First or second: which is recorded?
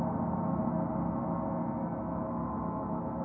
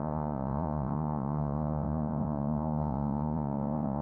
first